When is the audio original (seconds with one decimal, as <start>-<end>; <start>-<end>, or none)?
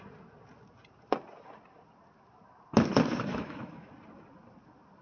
0.0-3.3; 3.9-5.0